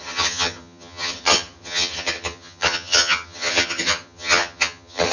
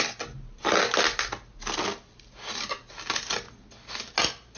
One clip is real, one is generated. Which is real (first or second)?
second